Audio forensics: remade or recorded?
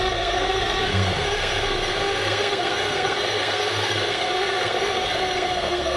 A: remade